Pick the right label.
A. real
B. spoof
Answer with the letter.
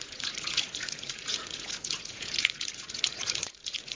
B